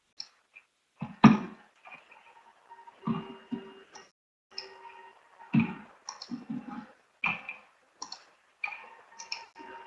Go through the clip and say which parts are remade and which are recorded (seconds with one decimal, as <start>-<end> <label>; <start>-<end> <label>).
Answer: 0.0-9.9 recorded